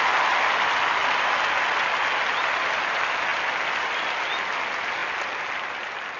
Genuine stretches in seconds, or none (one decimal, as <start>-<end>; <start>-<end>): 0.0-6.2

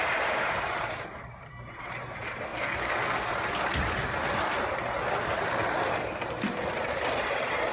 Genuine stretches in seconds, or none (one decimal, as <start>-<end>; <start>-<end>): 2.5-6.7

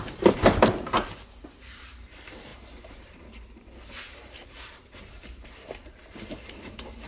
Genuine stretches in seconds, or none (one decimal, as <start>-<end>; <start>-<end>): 0.4-1.4

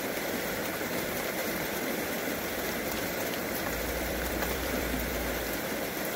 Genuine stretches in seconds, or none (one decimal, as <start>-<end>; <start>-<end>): 0.0-1.4; 5.1-6.2

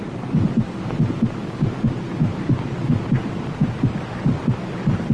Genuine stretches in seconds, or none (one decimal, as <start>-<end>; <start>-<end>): 0.0-5.1

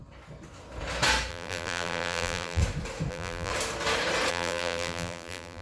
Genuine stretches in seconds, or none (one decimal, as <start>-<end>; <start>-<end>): 0.0-1.3; 2.6-3.1; 3.5-4.3

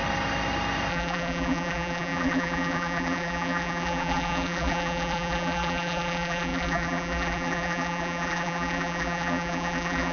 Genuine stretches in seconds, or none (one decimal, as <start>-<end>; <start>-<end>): 0.0-0.9

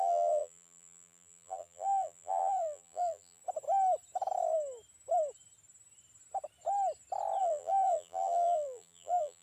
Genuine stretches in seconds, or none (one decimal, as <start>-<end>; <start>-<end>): 3.4-7.4